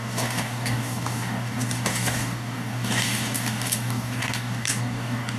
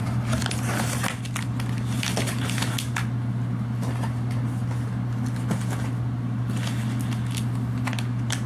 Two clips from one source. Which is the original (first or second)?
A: second